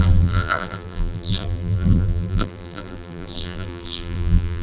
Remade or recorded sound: remade